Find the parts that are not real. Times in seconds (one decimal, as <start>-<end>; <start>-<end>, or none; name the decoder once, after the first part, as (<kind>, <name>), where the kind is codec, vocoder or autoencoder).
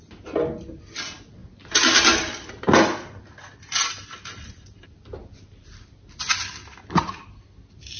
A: none